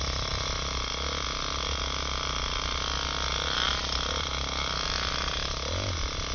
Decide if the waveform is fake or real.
real